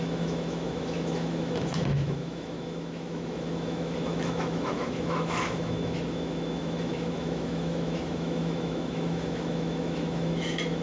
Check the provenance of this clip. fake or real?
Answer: fake